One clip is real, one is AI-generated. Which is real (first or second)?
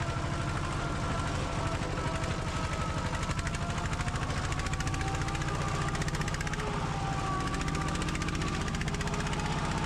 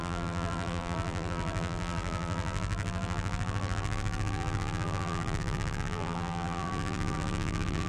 first